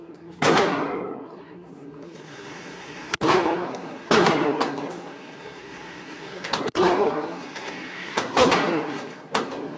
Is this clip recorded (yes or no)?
no